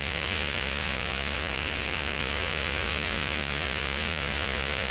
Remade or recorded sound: remade